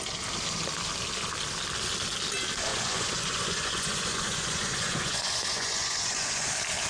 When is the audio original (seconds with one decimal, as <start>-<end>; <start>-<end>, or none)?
0.0-2.7; 6.5-6.9